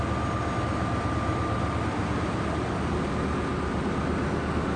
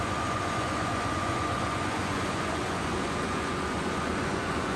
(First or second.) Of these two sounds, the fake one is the second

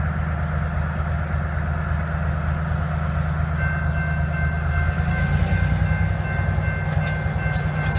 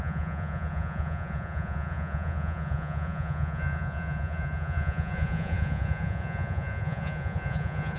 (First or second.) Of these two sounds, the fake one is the second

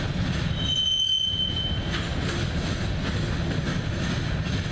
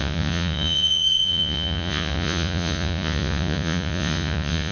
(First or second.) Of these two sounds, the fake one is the second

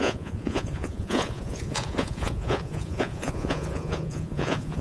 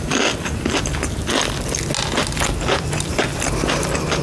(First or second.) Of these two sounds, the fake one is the first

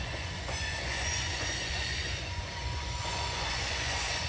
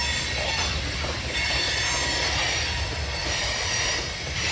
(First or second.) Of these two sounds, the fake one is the first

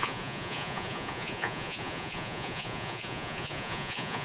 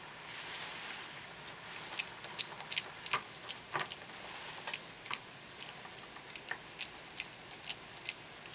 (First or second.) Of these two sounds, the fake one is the first